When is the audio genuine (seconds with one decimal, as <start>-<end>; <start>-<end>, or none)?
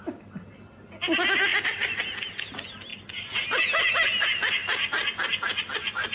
0.0-6.1